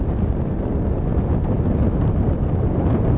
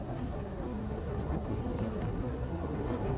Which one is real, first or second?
first